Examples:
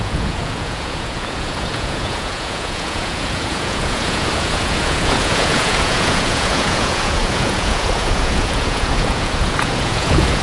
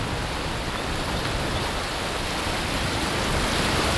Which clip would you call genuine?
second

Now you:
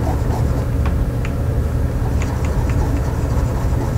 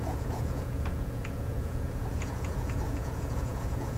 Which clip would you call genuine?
first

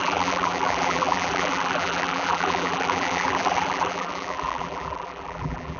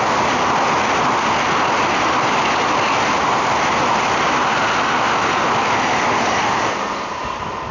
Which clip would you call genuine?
second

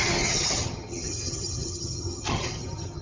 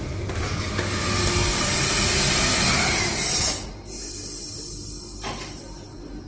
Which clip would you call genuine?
second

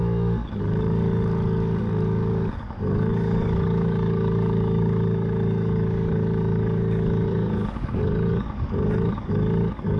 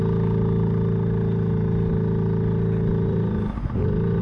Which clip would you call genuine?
second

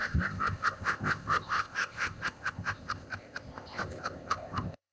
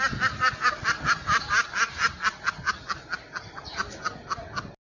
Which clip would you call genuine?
second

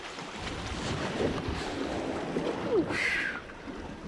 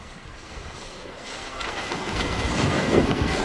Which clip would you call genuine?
first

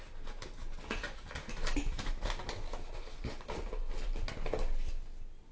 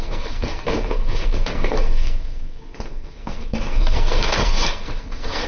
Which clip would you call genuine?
first